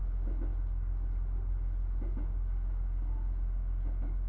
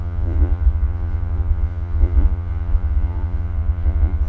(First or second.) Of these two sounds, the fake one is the second